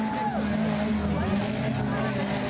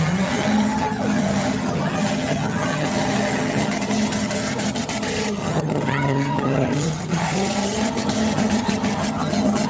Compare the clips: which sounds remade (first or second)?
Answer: second